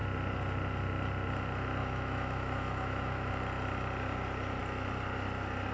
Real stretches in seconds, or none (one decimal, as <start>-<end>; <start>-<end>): 0.0-1.8; 3.3-5.7